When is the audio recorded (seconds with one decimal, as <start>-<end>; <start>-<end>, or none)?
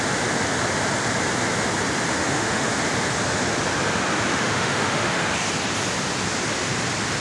0.0-2.1; 2.7-4.3; 5.2-7.2